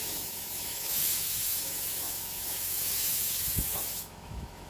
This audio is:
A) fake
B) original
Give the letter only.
A